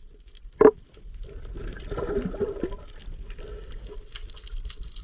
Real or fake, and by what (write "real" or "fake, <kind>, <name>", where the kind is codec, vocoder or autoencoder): real